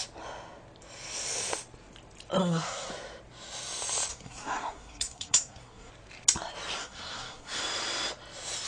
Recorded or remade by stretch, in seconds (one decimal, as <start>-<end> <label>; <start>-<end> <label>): 0.0-2.4 recorded; 2.4-2.9 remade; 2.9-4.1 recorded; 4.1-5.9 remade; 5.9-6.8 recorded; 6.8-7.6 remade; 7.6-8.7 recorded